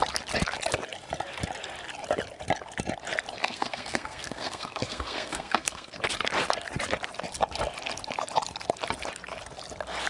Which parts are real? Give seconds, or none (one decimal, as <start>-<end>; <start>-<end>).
0.0-3.4; 6.0-10.1